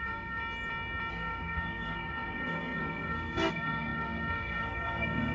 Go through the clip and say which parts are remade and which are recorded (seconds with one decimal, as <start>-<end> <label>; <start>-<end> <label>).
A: 0.0-0.4 remade; 0.4-1.1 recorded; 1.1-5.3 remade